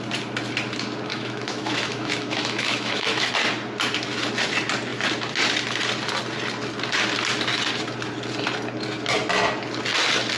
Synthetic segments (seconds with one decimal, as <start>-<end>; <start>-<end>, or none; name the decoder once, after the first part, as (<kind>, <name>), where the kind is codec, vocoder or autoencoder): 1.1-3.3 (autoencoder, DAC-VAE)